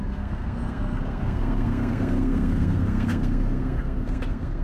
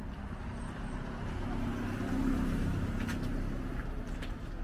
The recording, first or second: second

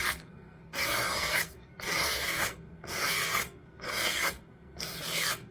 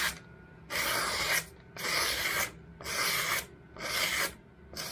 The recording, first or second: second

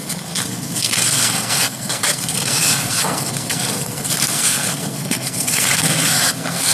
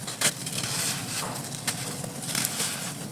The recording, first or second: second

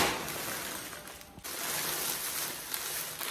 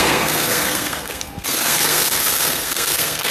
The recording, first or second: first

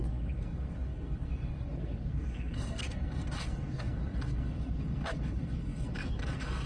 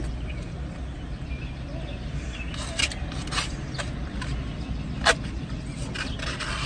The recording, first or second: second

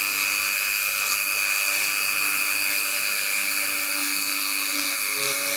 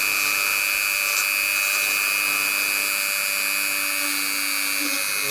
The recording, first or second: second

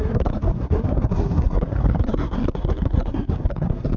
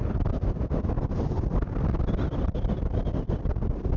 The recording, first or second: second